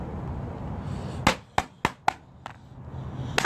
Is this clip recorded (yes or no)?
yes